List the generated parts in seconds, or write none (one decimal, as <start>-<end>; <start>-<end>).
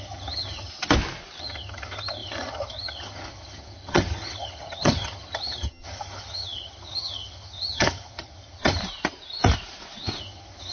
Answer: 0.0-0.7; 1.4-8.8; 10.2-10.7